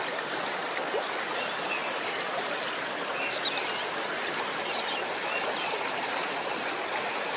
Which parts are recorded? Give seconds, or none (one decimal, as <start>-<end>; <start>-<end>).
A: 0.6-1.4; 1.8-2.4